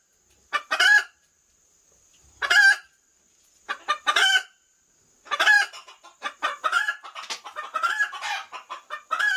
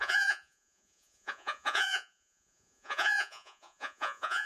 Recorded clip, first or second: first